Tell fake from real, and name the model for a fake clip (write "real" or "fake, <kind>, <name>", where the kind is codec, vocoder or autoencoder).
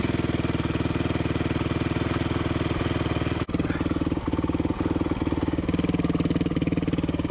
real